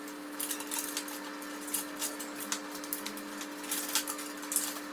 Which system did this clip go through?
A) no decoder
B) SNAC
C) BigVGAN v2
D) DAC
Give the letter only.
A